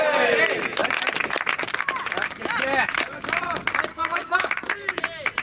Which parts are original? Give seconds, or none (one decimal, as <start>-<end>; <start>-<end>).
0.0-3.9; 4.5-5.4